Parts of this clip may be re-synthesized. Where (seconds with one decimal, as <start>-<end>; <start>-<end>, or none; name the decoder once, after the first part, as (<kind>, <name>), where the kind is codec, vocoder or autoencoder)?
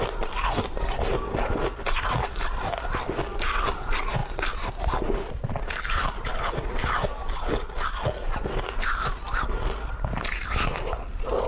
none